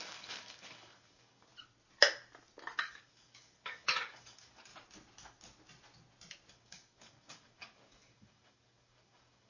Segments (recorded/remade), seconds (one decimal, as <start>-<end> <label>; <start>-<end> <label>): 0.0-1.5 remade; 1.5-2.8 recorded; 2.8-4.7 remade; 4.7-6.5 recorded; 6.5-9.5 remade